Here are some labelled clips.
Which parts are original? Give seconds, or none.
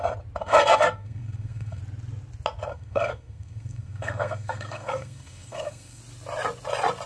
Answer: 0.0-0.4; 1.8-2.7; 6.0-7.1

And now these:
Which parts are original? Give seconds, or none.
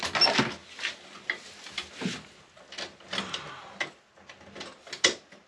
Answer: 0.0-5.5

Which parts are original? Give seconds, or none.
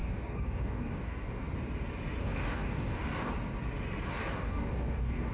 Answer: 1.4-2.2; 3.3-4.1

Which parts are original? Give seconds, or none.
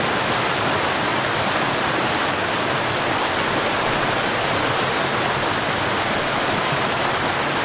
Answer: 0.0-7.6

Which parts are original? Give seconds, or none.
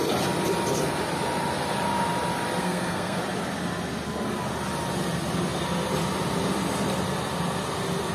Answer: 0.0-2.6; 3.2-8.1